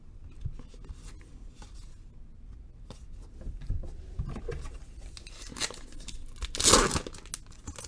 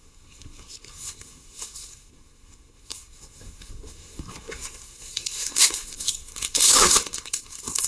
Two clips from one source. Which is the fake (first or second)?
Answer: second